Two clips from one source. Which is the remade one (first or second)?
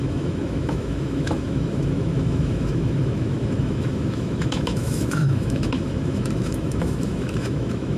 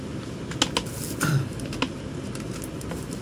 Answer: first